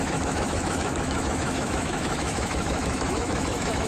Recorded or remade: remade